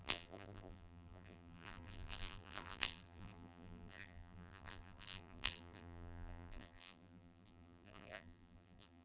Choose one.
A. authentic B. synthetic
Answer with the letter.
B